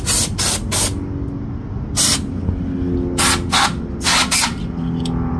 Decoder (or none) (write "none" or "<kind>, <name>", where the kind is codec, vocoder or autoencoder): none